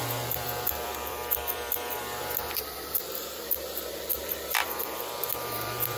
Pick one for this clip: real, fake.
fake